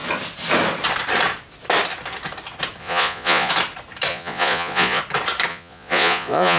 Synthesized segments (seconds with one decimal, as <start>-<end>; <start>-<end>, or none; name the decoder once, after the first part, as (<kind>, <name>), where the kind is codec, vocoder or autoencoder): 2.8-3.5 (vocoder, Vocos); 4.1-5.0; 5.5-6.6